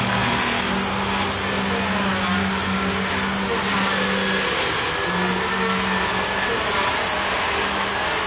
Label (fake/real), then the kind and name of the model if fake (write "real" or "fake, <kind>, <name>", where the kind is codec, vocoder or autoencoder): real